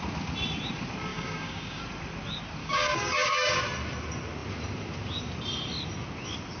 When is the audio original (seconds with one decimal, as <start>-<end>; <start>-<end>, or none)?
0.0-1.1; 1.8-2.6; 3.6-6.6